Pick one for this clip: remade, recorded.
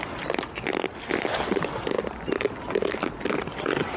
recorded